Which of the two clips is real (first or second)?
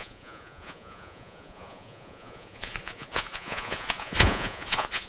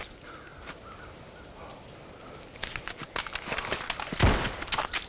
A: second